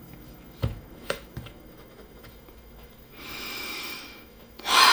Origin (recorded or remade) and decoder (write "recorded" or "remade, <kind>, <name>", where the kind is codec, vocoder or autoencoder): remade, autoencoder, DAC-VAE